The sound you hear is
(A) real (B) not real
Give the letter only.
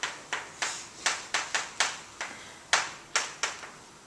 A